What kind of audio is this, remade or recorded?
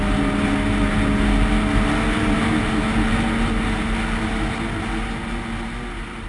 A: recorded